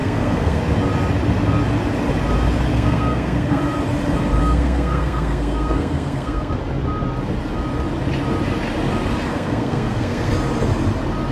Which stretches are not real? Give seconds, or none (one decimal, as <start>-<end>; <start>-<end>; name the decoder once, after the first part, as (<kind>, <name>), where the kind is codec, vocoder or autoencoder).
0.0-0.6 (codec, SNAC); 2.7-3.6; 4.4-6.6; 9.3-10.3